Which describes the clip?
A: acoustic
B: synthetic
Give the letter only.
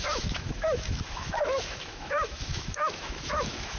B